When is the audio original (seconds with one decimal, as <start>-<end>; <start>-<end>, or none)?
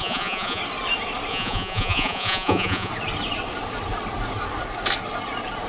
0.6-1.3; 2.9-5.7